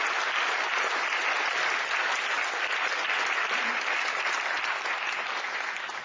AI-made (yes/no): no